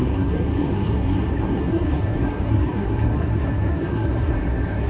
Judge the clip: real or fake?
fake